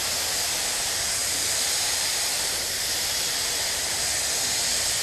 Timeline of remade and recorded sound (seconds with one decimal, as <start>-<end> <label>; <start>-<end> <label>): 0.0-1.2 recorded; 1.2-4.2 remade; 4.2-5.0 recorded